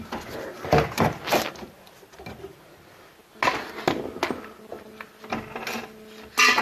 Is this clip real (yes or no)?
yes